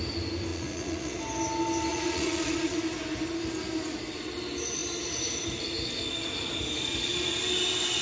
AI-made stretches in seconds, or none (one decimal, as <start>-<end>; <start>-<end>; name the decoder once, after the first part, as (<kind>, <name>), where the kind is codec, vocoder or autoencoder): 0.5-1.2 (vocoder, Vocos); 1.9-2.8